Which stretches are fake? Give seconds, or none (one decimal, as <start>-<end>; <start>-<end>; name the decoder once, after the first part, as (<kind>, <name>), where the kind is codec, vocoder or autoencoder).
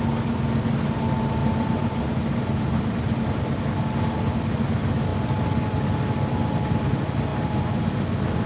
1.4-3.6 (vocoder, BigVGAN v2)